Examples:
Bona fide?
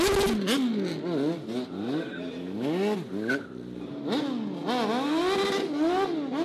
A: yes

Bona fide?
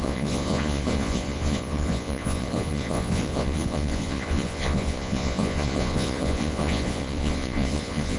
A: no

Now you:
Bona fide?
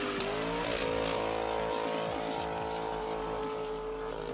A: yes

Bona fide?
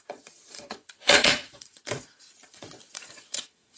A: no